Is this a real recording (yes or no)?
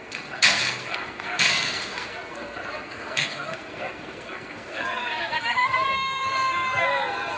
no